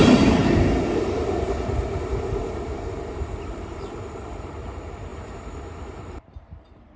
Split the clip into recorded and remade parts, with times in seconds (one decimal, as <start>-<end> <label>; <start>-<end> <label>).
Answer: 0.0-0.4 remade; 0.4-2.4 recorded; 2.4-5.1 remade; 5.1-6.0 recorded; 6.0-7.0 remade